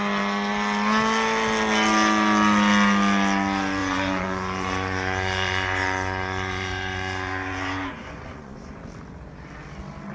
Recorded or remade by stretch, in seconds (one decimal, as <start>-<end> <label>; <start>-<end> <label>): 0.0-3.8 recorded; 3.8-8.8 remade; 8.8-10.1 recorded